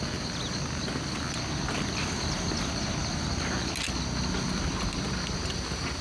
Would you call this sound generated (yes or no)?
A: no